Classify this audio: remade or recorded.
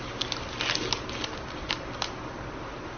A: recorded